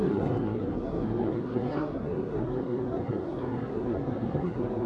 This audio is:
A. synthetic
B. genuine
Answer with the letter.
A